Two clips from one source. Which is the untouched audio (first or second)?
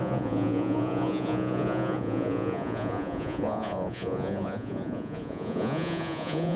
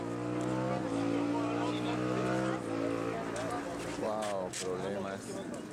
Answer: second